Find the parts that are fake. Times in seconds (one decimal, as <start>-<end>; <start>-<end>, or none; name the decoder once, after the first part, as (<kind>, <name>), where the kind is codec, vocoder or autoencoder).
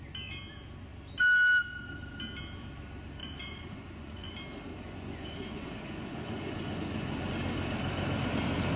3.2-4.3 (vocoder, Vocos); 4.7-7.3